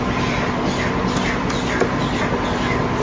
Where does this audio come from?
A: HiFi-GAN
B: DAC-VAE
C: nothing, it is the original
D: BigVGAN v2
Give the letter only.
C